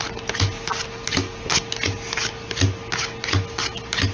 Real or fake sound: real